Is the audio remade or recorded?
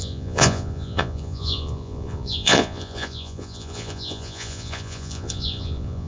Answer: remade